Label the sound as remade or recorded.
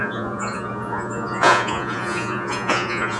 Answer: remade